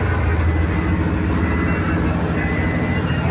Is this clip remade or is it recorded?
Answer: recorded